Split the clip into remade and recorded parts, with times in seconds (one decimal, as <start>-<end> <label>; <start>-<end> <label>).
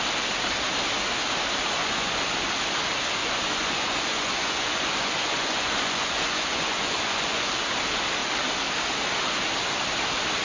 0.0-1.8 recorded; 1.8-2.3 remade; 2.3-3.2 recorded; 3.2-7.5 remade; 7.5-10.4 recorded